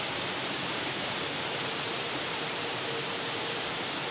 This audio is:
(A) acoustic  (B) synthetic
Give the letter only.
B